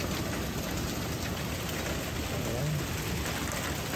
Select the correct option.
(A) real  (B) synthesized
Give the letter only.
A